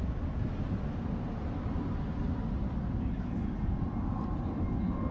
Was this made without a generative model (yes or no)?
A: yes